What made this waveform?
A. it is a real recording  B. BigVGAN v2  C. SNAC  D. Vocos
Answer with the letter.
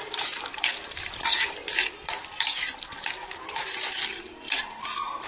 B